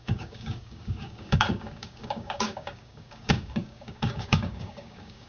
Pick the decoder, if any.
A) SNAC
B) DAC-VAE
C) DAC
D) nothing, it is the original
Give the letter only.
C